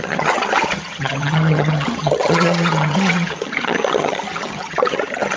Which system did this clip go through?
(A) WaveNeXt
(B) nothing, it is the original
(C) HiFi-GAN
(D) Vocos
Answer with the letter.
C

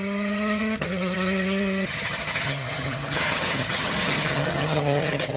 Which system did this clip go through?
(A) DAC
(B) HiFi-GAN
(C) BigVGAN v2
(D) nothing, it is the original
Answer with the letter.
B